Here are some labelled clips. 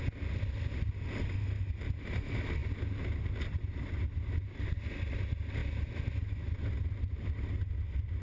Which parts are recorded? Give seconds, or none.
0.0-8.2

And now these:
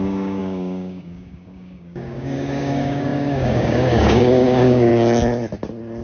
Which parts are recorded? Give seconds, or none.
4.9-6.0

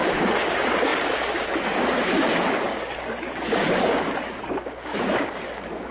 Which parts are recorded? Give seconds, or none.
none

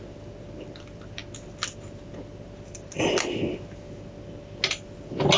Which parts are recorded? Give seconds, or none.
0.0-5.4